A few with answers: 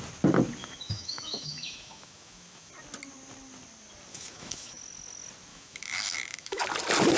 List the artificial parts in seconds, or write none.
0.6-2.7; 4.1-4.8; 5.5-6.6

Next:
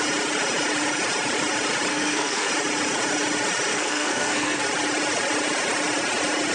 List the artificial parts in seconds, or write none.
1.9-2.5; 3.7-4.6

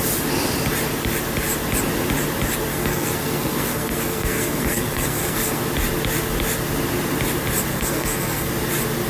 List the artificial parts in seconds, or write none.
2.7-5.6; 7.7-8.5

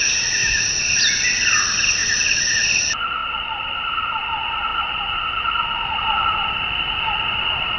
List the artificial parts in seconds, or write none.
0.4-1.0; 4.7-7.8

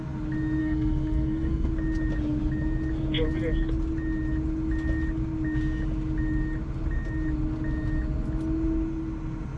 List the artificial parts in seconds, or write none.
0.6-1.7

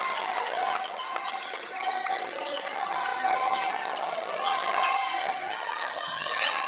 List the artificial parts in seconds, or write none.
0.0-6.7

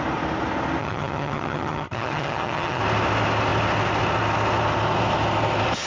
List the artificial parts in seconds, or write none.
0.8-2.8

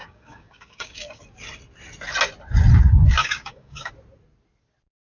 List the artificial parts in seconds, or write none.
0.0-1.2; 3.2-3.9